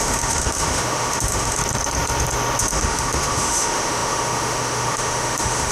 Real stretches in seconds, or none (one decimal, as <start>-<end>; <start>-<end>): 1.6-2.6